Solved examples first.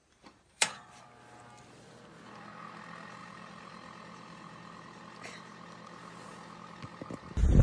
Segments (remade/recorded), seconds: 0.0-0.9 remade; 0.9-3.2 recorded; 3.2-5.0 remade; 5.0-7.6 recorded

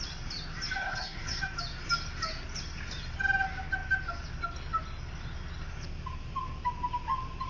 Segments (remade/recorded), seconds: 0.0-0.8 recorded; 0.8-1.4 remade; 1.4-7.5 recorded

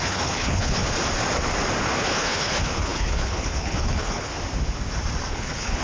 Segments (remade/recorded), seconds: 0.0-0.8 remade; 0.8-2.0 recorded; 2.0-4.3 remade; 4.3-5.3 recorded; 5.3-5.8 remade

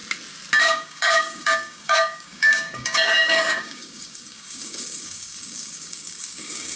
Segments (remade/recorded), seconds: 0.0-0.6 recorded; 0.6-6.8 remade